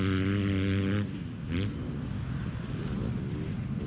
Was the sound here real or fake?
fake